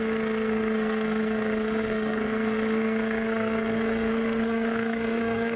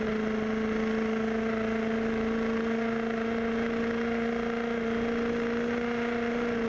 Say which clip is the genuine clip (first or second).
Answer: second